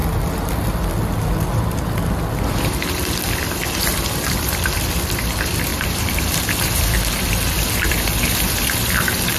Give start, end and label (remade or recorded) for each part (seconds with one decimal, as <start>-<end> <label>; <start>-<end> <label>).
0.0-0.6 recorded; 0.6-9.4 remade